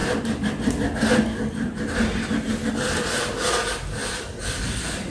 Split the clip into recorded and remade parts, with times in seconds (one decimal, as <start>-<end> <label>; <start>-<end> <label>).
0.0-5.1 recorded